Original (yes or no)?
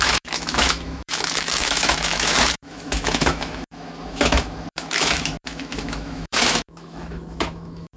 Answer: no